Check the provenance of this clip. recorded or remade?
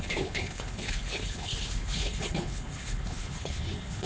remade